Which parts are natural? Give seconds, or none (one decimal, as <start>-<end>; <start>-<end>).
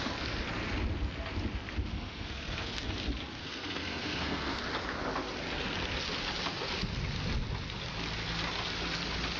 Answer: 0.0-1.9; 2.8-3.4; 4.6-9.4